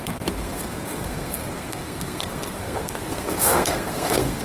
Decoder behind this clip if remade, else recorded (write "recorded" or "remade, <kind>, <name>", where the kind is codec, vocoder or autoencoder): remade, codec, SNAC